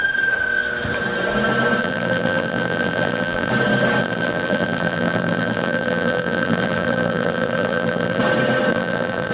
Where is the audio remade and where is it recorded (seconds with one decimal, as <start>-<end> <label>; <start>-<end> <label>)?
0.0-1.8 recorded; 1.8-3.5 remade; 3.5-4.0 recorded; 4.0-8.2 remade; 8.2-8.7 recorded; 8.7-9.3 remade